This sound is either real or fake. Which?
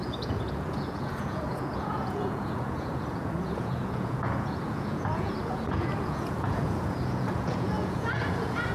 fake